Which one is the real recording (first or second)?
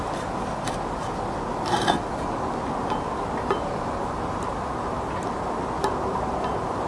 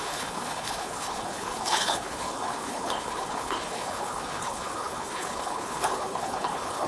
first